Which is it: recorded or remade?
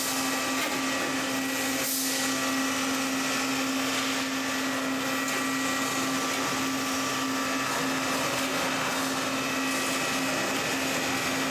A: recorded